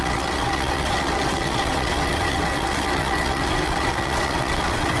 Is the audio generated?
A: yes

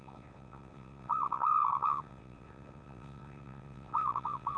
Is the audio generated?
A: yes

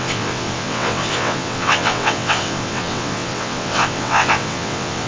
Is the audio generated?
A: yes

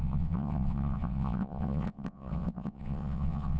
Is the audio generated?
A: yes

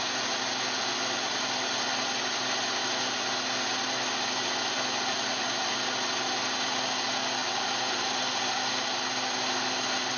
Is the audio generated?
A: no